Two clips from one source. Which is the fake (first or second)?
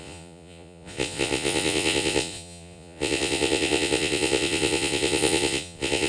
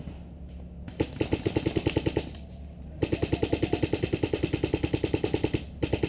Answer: first